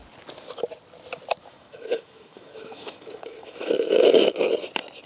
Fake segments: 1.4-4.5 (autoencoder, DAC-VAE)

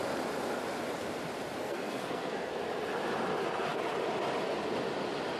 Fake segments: 1.6-2.6 (codec, SNAC)

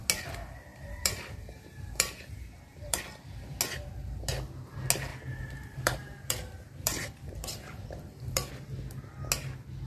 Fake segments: 0.7-3.0 (vocoder, BigVGAN v2); 5.1-8.5

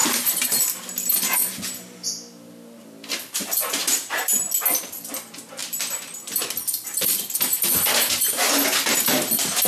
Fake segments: 0.0-0.6 (vocoder, BigVGAN v2); 3.8-4.4

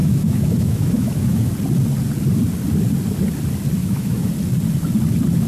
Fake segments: 0.0-1.5 (autoencoder, DAC-VAE); 3.8-4.3

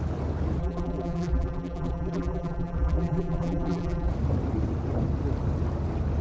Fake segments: 0.6-4.1 (vocoder, BigVGAN v2)

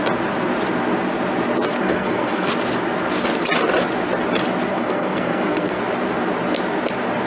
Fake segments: 1.8-2.5 (codec, SNAC); 4.7-5.8

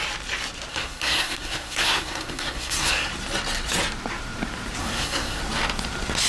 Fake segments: 0.7-3.1 (codec, SNAC); 4.8-5.4